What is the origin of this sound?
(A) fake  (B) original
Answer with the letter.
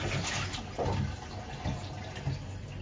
B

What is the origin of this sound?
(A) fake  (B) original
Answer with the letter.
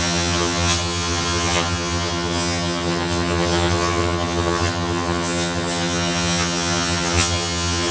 A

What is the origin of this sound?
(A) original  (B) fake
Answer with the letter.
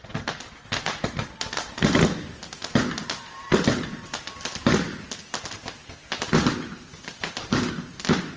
A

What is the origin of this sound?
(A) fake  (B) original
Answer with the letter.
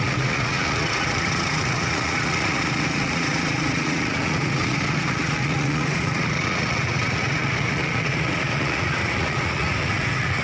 A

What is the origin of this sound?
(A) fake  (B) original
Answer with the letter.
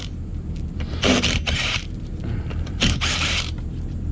A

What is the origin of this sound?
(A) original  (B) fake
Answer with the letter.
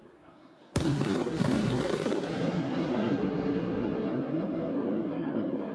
B